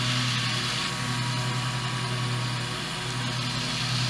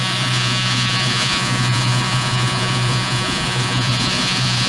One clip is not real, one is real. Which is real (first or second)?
first